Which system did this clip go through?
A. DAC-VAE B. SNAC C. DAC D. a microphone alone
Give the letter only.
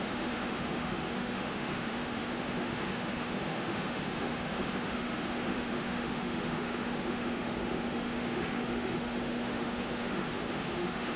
A